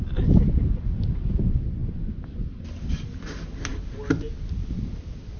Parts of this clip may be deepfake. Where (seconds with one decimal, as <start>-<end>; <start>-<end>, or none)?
none